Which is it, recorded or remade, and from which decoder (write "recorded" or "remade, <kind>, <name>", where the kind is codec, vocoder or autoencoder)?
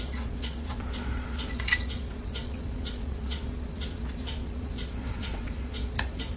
remade, vocoder, Vocos